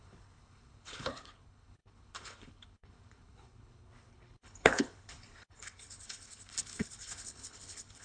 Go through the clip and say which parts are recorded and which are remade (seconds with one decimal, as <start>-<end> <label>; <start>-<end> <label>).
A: 0.0-8.0 remade